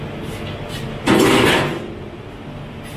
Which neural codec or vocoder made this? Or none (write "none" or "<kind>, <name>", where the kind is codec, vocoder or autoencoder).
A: none